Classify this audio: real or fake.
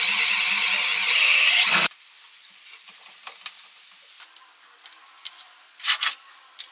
real